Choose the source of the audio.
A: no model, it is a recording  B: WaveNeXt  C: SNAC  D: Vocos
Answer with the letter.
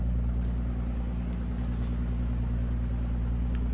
A